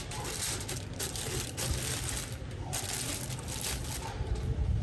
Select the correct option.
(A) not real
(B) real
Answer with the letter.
B